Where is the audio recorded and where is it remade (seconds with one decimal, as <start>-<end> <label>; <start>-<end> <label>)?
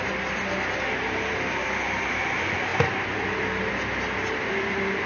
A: 0.0-1.3 recorded; 1.3-2.2 remade; 2.2-5.1 recorded